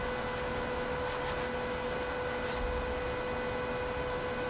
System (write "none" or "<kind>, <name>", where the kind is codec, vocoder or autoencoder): none